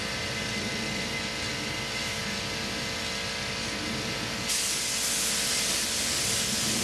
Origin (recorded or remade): recorded